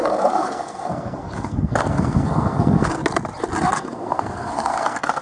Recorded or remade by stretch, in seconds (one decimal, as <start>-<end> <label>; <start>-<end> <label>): 0.0-3.0 remade; 3.0-3.7 recorded; 3.7-5.2 remade